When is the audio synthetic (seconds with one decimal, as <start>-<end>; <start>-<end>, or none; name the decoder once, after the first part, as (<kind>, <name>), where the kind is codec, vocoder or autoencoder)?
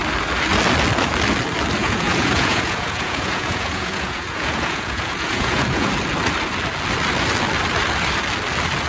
1.8-5.9 (vocoder, Vocos)